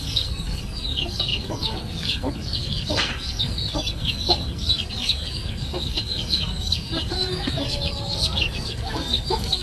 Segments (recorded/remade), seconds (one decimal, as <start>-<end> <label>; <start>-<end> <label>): 0.0-9.6 remade